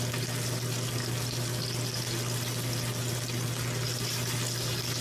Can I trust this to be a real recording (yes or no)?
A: yes